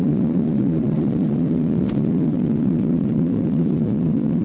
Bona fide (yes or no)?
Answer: no